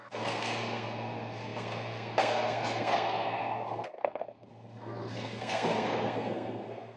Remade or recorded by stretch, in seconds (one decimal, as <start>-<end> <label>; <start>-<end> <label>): 0.0-7.0 remade